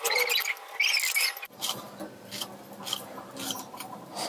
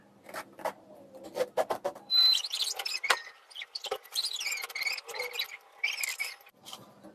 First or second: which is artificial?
second